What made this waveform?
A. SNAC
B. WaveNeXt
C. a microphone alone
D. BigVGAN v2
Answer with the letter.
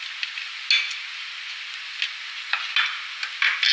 C